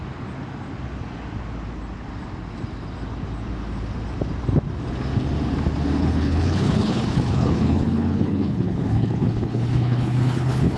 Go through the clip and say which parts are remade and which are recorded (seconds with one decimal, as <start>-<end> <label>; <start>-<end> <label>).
0.0-6.0 recorded; 6.0-10.8 remade